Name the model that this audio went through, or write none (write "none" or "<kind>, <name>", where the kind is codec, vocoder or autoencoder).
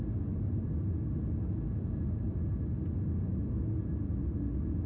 none